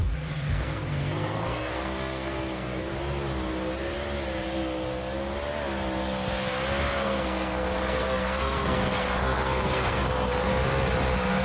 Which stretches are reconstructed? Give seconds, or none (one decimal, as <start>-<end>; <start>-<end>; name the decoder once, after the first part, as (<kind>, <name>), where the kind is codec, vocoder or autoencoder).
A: 0.0-2.9 (codec, SNAC); 6.9-10.5